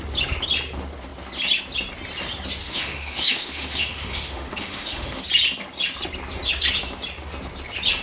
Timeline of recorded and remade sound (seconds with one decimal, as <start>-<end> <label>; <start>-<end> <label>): 0.0-2.6 recorded; 2.6-5.2 remade; 5.2-8.0 recorded